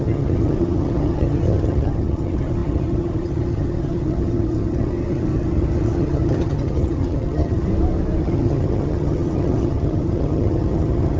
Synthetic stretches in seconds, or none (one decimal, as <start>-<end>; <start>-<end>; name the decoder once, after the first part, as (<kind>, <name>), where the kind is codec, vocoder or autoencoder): 0.0-7.7 (vocoder, HiFi-GAN); 8.2-11.2